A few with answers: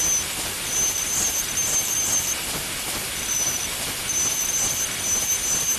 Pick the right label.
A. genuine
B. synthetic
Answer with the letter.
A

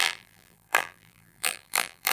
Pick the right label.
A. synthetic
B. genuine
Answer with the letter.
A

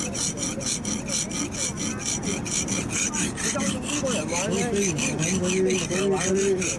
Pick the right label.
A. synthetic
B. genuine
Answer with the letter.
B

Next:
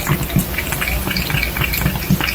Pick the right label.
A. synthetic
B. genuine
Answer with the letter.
B